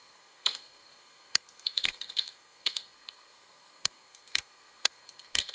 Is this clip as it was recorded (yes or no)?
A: no